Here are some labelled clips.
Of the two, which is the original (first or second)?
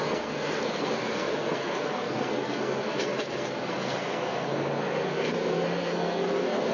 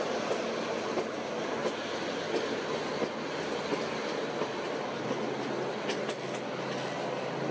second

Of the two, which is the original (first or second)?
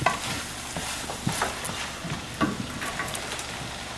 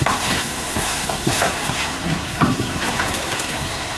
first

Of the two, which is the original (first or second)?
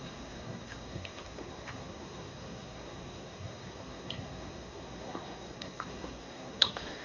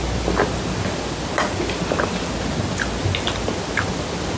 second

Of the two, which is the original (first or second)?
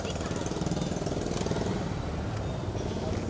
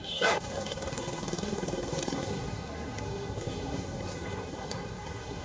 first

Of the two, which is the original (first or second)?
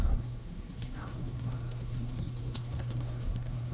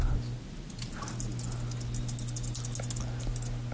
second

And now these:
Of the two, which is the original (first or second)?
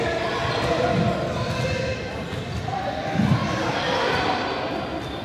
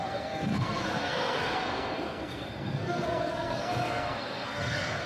first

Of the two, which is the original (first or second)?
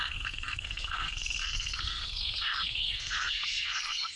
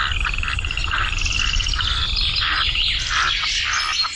second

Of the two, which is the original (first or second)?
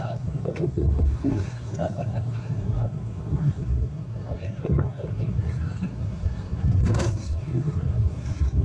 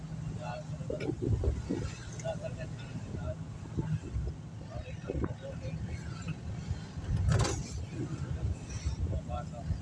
second